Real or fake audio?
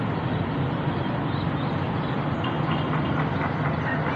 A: real